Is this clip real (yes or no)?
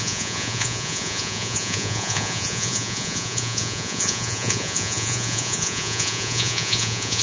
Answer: no